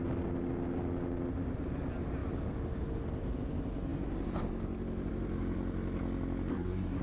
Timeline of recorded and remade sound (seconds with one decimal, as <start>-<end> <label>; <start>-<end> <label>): 0.0-6.5 recorded; 6.5-7.0 remade